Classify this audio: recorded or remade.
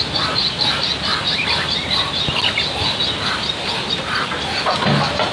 recorded